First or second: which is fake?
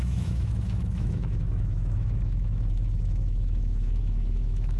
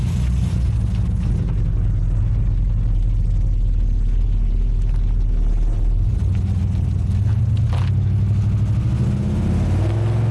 first